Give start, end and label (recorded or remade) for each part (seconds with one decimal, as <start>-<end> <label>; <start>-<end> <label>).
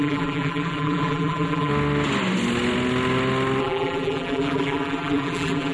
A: 0.0-1.7 remade; 1.7-3.6 recorded; 3.6-5.7 remade